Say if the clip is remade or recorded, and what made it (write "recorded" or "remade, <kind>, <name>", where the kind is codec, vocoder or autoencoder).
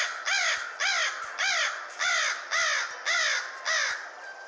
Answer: recorded